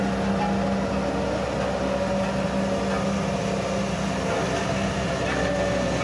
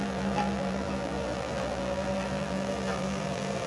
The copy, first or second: second